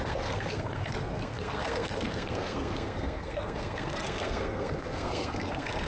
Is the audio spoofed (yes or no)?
yes